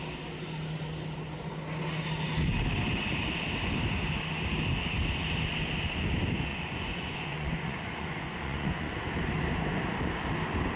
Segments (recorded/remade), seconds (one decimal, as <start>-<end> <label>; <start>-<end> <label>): 0.0-6.5 recorded; 6.5-8.9 remade; 8.9-10.8 recorded